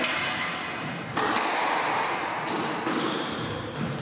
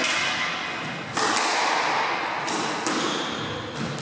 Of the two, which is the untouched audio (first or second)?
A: second